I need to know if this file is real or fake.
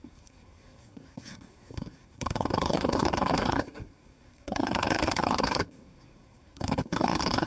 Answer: fake